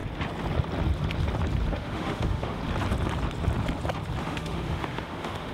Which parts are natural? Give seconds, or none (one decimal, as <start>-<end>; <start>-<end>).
0.0-1.7; 2.6-4.2